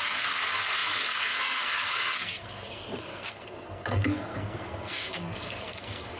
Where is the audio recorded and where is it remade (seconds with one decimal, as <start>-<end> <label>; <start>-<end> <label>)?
0.0-6.2 remade